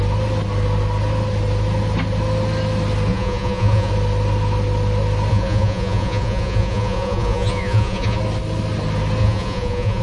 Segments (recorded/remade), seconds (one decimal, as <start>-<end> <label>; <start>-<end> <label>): 0.0-3.1 recorded; 3.1-3.9 remade; 3.9-5.3 recorded; 5.3-8.2 remade; 8.2-9.2 recorded; 9.2-10.0 remade